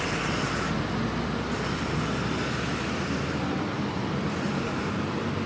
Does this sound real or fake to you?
real